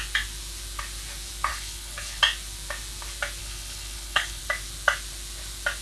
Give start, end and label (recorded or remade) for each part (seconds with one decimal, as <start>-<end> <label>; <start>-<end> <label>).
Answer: 0.0-1.5 recorded; 1.5-2.2 remade; 2.2-3.4 recorded; 3.4-4.4 remade; 4.4-5.8 recorded